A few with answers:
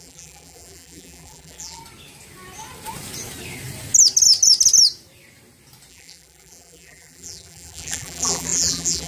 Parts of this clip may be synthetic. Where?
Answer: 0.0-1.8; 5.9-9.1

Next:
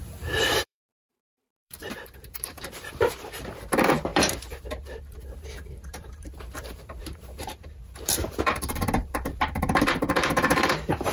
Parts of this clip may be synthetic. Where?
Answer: 0.0-11.1

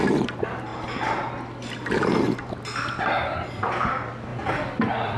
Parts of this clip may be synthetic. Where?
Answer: 4.3-5.2